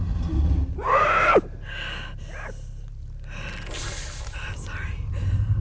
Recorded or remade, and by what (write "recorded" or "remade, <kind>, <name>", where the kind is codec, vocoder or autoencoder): recorded